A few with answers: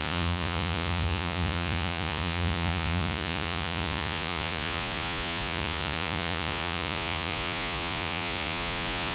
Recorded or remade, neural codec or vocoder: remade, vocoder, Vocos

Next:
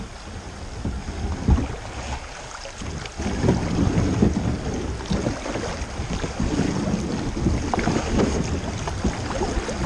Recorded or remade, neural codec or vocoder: recorded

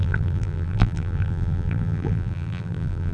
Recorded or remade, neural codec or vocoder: remade, vocoder, BigVGAN v2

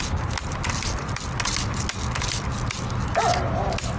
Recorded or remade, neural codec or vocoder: recorded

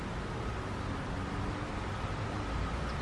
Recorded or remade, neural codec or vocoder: recorded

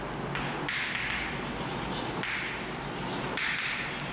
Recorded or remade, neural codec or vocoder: recorded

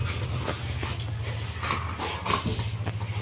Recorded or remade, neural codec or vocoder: recorded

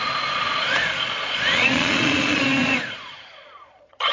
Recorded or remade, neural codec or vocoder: remade, vocoder, Vocos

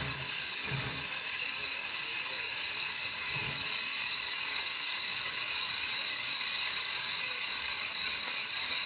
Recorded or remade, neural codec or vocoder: remade, codec, DAC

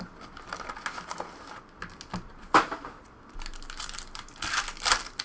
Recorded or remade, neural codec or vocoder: recorded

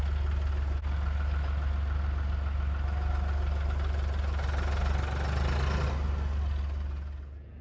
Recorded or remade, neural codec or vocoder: recorded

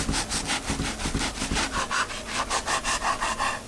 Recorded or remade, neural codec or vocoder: recorded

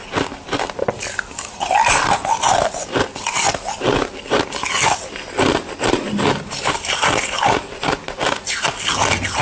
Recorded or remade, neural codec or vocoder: recorded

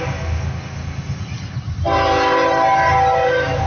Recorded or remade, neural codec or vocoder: recorded